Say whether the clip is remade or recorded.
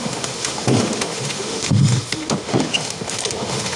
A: remade